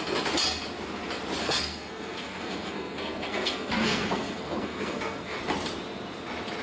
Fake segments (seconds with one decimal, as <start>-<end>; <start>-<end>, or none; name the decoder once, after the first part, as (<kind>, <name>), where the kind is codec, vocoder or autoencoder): 1.4-5.4 (codec, SNAC)